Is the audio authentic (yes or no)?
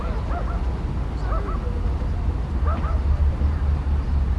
yes